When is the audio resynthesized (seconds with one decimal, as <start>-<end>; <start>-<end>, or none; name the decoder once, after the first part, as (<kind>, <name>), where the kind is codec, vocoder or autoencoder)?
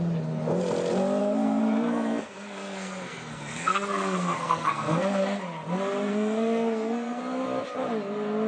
1.2-5.4 (codec, SNAC); 6.1-7.2